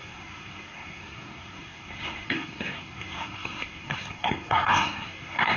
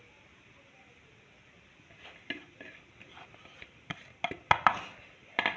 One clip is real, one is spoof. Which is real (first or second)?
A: second